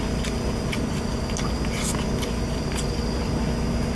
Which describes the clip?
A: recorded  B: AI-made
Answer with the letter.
A